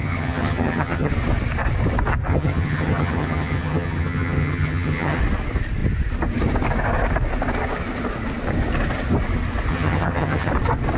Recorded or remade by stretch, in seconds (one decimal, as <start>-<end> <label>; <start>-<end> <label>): 0.0-1.1 remade; 1.1-2.3 recorded; 2.3-5.2 remade; 5.2-9.7 recorded; 9.7-10.5 remade; 10.5-11.0 recorded